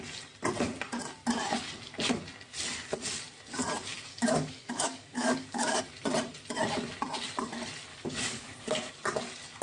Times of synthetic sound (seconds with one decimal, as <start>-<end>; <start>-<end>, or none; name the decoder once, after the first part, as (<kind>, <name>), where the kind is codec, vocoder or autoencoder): 4.1-5.8 (codec, DAC); 7.9-8.9